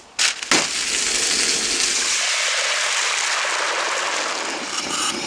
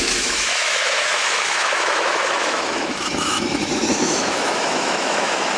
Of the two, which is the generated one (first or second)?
second